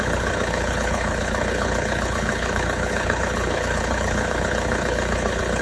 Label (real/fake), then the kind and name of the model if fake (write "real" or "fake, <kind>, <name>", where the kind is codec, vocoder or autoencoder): fake, codec, HILCodec